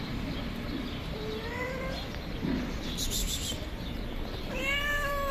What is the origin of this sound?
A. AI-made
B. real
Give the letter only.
A